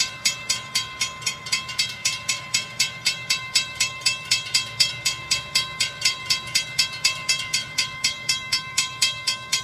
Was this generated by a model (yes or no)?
yes